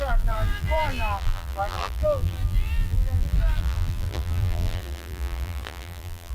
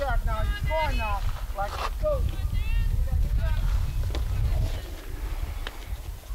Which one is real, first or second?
second